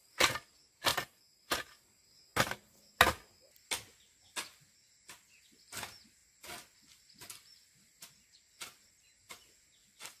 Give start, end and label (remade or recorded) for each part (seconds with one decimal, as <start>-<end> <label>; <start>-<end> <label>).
0.0-10.2 recorded